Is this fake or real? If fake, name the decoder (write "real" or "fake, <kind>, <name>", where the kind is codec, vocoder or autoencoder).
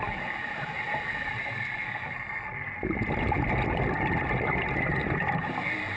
real